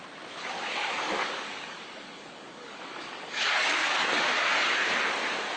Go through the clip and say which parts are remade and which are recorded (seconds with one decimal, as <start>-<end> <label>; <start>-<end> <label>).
0.0-0.8 recorded; 0.8-4.2 remade; 4.2-5.6 recorded